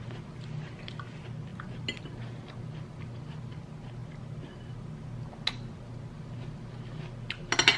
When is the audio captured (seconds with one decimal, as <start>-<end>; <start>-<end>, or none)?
0.0-7.8